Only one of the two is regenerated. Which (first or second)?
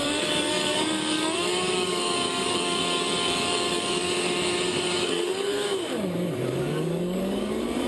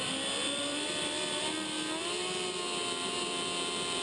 first